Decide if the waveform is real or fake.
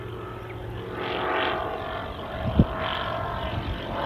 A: real